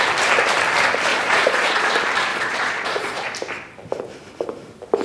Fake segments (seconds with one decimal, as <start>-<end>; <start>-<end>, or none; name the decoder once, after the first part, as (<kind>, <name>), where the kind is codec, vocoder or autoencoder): 1.1-1.9 (vocoder, Vocos); 2.3-3.2